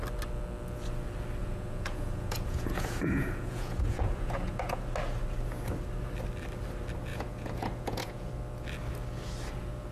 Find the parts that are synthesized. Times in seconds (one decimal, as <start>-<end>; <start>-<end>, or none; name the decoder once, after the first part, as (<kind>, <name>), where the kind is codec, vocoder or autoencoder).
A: 1.4-4.8 (vocoder, Vocos); 7.1-8.3